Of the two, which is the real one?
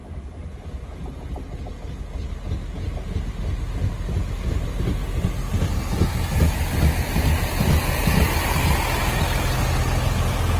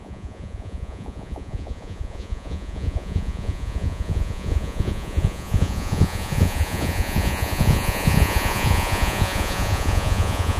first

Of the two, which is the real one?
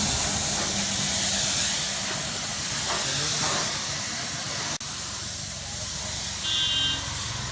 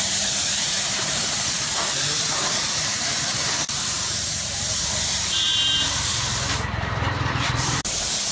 first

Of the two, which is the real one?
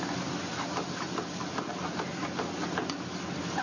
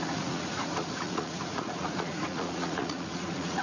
first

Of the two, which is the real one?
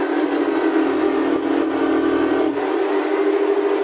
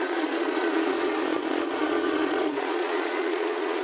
first